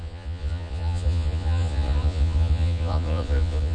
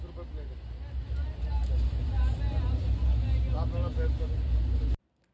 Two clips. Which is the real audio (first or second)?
second